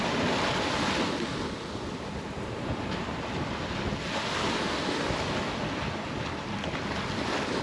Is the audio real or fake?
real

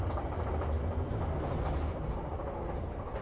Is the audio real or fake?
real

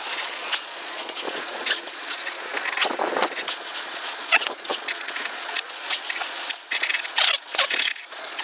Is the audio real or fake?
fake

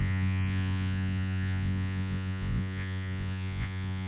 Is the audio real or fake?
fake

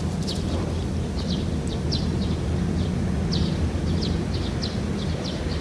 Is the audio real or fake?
real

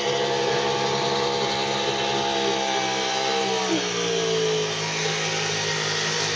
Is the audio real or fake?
real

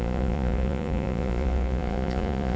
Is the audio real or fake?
fake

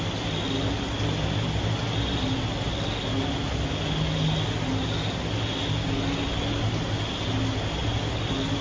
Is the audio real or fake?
real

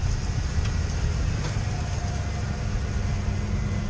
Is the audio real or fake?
real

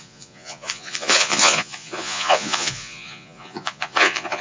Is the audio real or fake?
fake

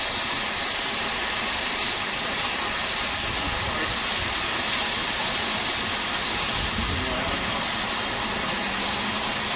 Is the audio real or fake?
real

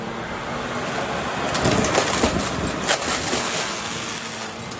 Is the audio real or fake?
real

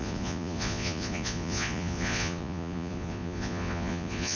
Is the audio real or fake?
fake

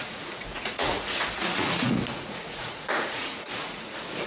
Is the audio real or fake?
fake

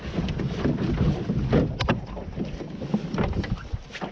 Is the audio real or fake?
real